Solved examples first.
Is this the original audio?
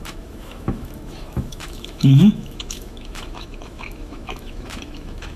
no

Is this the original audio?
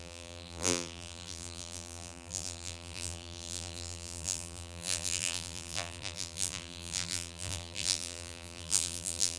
no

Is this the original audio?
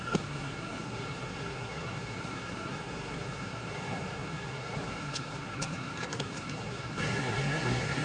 no